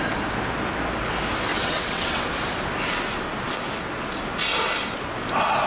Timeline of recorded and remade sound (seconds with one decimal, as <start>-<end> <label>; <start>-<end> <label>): 0.0-1.5 recorded; 1.5-2.3 remade; 2.3-5.7 recorded